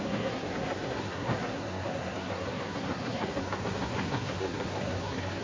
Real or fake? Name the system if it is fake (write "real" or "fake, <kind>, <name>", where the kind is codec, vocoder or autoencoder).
fake, codec, SNAC